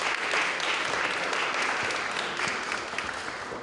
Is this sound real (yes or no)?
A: yes